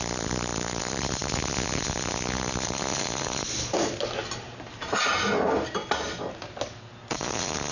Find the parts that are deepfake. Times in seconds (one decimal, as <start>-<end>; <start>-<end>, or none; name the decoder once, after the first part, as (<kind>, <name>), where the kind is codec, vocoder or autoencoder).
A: none